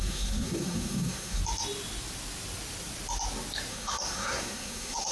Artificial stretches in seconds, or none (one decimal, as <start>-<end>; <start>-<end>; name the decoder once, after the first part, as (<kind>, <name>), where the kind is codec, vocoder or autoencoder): 0.0-1.4 (codec, SNAC); 3.7-5.1